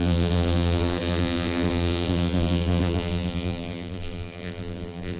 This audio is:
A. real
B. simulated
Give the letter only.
B